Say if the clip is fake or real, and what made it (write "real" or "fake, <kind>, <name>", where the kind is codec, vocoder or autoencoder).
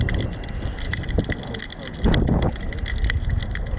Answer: real